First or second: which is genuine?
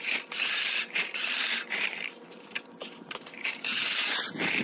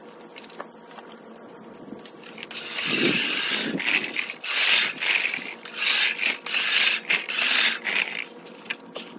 second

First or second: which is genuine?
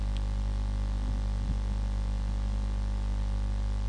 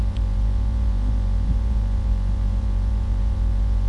first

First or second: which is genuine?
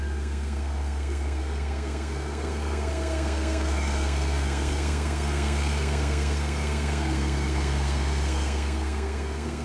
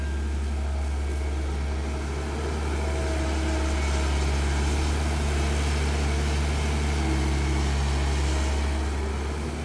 second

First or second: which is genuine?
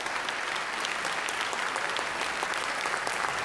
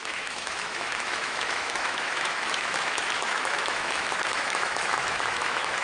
first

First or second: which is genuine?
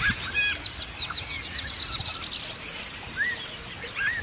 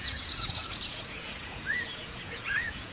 first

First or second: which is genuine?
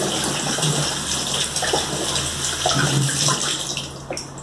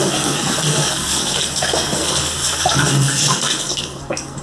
first